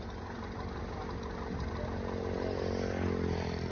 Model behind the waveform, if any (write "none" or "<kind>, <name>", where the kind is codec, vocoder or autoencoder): none